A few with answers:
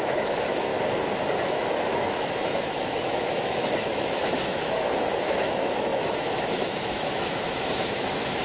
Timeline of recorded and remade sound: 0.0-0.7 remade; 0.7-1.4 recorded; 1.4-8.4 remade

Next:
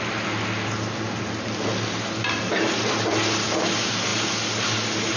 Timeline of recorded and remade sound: 0.0-5.2 recorded